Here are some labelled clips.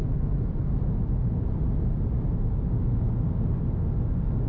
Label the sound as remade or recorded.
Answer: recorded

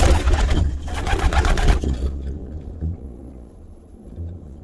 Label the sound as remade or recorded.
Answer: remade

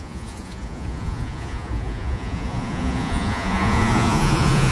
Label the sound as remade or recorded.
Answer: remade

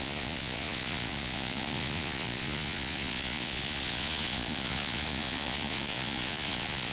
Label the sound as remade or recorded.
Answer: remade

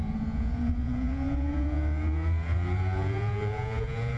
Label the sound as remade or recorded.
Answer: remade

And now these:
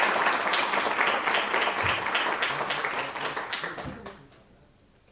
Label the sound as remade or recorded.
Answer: recorded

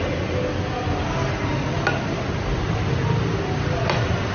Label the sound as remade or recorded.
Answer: recorded